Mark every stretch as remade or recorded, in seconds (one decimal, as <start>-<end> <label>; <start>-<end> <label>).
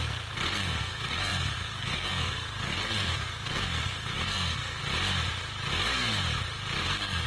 0.0-4.8 remade; 4.8-6.8 recorded; 6.8-7.3 remade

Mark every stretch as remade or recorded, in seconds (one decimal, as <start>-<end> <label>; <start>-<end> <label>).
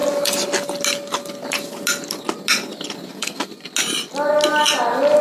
0.0-3.1 recorded; 3.1-3.5 remade; 3.5-5.2 recorded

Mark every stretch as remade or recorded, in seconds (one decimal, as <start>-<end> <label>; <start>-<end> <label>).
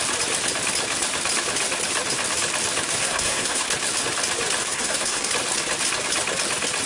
0.0-3.0 recorded; 3.0-3.6 remade; 3.6-4.6 recorded; 4.6-5.3 remade; 5.3-6.9 recorded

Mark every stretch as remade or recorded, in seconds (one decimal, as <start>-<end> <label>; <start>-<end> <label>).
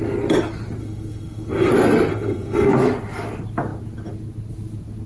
0.0-0.8 recorded; 0.8-1.7 remade; 1.7-2.1 recorded; 2.1-2.7 remade; 2.7-5.1 recorded